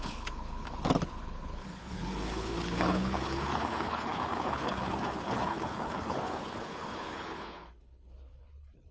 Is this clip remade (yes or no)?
yes